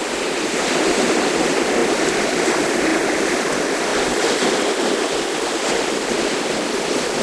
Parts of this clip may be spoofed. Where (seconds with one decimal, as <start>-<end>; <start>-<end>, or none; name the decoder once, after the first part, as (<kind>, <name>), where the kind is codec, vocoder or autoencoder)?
none